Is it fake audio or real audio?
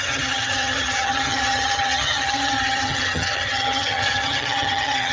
fake